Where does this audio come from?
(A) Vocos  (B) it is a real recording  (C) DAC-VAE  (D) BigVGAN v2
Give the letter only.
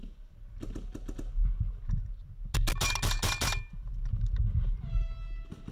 B